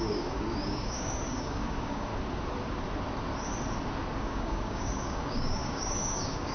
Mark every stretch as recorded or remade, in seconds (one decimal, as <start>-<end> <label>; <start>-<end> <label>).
0.0-2.1 remade; 2.1-4.2 recorded; 4.2-6.5 remade